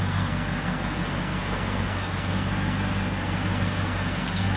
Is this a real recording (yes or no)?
no